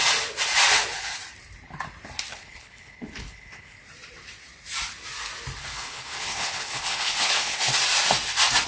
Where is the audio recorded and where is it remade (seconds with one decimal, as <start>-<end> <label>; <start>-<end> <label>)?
0.0-2.3 recorded; 2.3-3.8 remade; 3.8-5.6 recorded; 5.6-7.7 remade; 7.7-8.7 recorded